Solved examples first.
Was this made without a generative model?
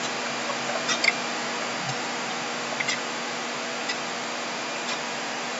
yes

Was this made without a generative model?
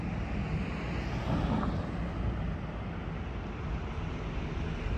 yes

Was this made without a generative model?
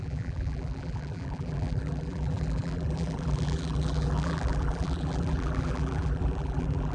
no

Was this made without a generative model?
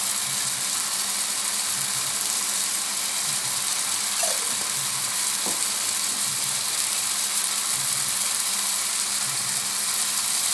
no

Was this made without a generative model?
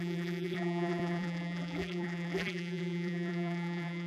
no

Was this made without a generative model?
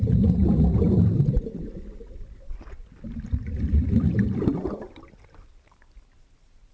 no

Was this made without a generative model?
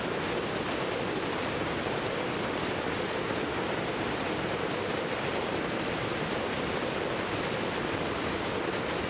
no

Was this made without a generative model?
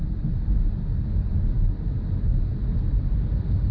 yes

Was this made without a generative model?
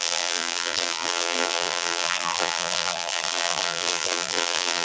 no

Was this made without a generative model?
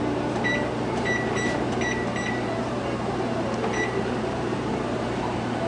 no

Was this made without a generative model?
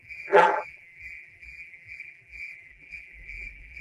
no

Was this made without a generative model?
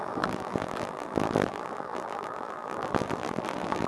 no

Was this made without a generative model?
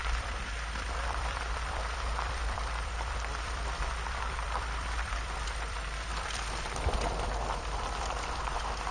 no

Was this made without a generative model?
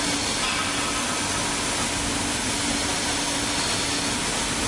yes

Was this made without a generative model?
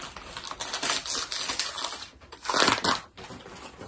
yes